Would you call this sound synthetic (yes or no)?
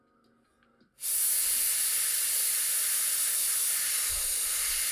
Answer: no